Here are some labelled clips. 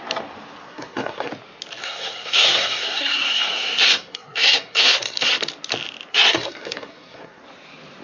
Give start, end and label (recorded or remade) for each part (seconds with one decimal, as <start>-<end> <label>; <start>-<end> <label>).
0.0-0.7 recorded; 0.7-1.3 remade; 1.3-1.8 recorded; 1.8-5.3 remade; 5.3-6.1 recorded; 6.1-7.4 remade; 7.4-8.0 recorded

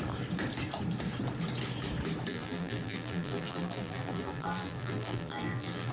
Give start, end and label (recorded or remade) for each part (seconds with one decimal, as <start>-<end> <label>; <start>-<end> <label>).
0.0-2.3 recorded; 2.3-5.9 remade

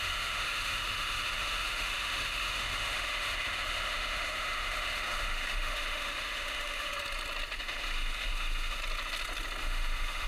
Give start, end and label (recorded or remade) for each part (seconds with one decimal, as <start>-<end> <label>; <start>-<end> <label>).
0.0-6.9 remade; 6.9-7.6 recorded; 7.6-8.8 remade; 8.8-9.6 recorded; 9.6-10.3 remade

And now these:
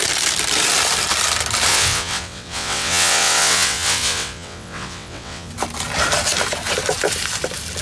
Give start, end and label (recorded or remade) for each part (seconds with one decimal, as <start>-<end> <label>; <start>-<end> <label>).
0.0-1.7 recorded; 1.7-5.5 remade; 5.5-7.8 recorded

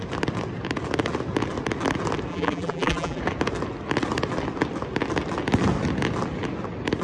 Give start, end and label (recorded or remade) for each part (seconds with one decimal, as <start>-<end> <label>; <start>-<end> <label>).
0.0-2.3 recorded; 2.3-3.2 remade; 3.2-7.0 recorded

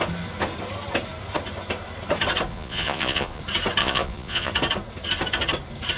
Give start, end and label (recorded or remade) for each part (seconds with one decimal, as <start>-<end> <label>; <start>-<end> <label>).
0.0-2.5 recorded; 2.5-3.4 remade; 3.4-3.8 recorded; 3.8-4.5 remade; 4.5-6.0 recorded

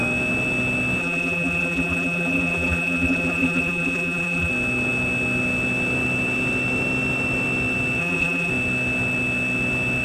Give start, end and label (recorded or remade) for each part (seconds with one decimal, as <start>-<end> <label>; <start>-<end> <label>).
0.0-1.0 recorded; 1.0-4.5 remade; 4.5-8.0 recorded; 8.0-8.5 remade; 8.5-10.0 recorded